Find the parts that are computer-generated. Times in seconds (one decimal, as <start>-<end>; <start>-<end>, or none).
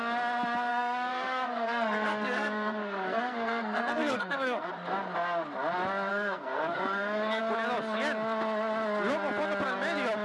0.7-4.7; 6.1-7.4